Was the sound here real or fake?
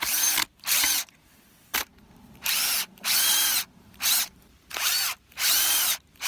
fake